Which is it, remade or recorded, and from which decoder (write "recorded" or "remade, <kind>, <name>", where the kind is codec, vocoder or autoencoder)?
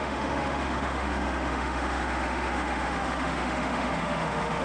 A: remade, autoencoder, DAC-VAE